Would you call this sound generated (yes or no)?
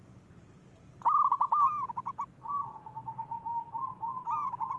no